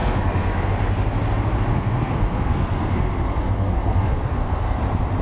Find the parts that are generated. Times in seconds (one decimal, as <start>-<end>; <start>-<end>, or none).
0.0-0.7; 1.7-4.8